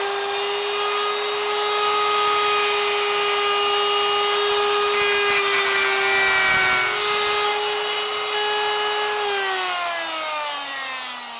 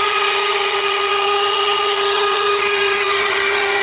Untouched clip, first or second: first